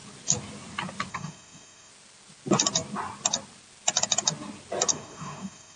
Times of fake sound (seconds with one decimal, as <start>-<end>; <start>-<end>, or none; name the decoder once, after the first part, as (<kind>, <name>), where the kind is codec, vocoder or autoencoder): 1.1-1.9 (codec, SNAC); 4.9-5.8